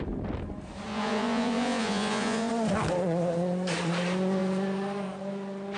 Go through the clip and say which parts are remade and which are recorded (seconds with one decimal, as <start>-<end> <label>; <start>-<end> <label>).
0.0-0.9 recorded; 0.9-2.5 remade; 2.5-5.8 recorded